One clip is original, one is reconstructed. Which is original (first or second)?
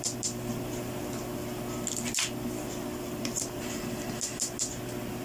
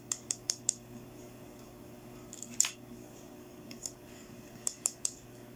first